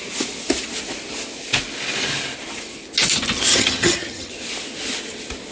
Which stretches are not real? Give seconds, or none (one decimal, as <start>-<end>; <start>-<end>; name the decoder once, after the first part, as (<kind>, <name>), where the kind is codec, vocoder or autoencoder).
3.5-4.3 (vocoder, HiFi-GAN)